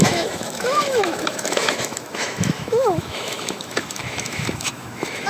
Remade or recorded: remade